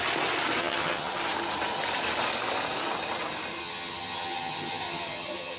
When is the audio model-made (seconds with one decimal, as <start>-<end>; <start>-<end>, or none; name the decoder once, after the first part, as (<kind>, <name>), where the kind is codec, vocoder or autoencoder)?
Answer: 0.6-1.2 (vocoder, HiFi-GAN); 3.6-5.6